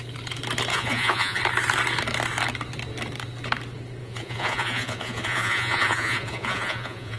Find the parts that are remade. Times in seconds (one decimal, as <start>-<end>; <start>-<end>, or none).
0.7-1.4; 4.0-7.2